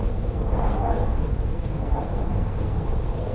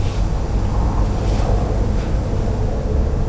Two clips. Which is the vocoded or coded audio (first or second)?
first